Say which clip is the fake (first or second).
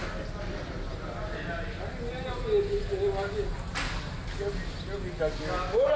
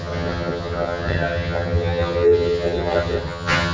second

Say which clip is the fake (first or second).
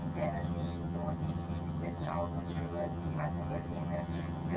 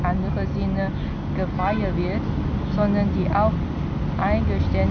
first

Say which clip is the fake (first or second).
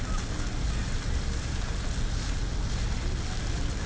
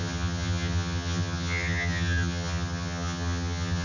second